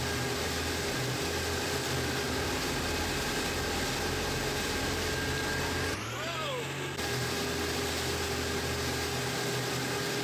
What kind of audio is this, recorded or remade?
recorded